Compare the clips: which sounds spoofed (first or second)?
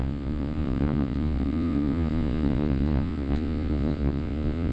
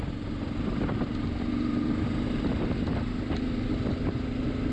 first